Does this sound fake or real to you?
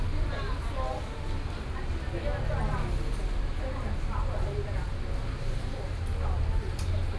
real